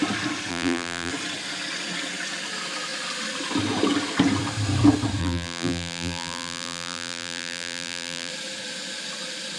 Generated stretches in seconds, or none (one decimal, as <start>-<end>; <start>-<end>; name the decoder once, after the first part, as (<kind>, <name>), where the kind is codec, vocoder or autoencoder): 0.5-1.1 (vocoder, BigVGAN v2); 5.2-8.3